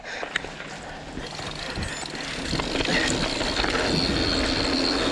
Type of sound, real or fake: real